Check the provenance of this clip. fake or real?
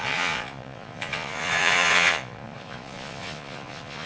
fake